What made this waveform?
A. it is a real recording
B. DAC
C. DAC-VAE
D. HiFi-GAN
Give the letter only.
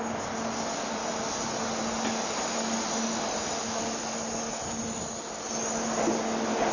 A